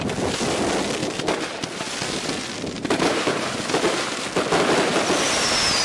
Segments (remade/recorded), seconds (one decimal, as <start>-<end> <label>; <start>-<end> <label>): 0.0-1.0 recorded; 1.0-4.2 remade; 4.2-5.8 recorded